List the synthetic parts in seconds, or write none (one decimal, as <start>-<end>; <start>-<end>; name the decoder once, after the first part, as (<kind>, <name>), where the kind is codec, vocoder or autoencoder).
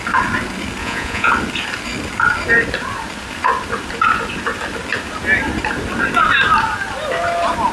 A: 0.8-1.3 (vocoder, Vocos)